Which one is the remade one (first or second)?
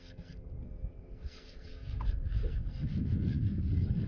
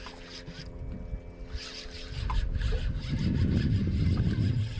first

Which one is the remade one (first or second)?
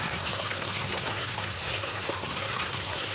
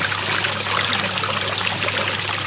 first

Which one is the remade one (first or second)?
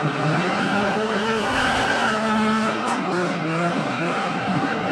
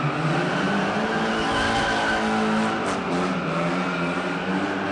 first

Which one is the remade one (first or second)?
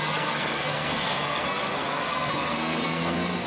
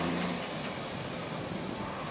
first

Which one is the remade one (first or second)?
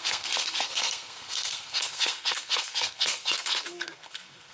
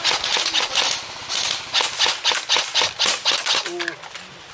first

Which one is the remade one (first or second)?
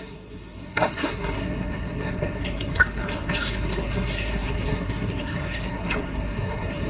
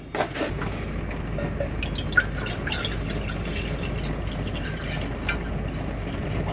first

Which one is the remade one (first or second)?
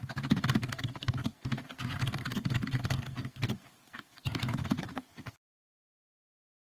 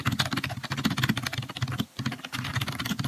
first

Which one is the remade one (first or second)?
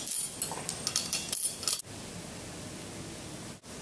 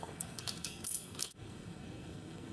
second